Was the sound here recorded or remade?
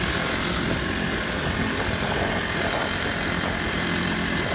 recorded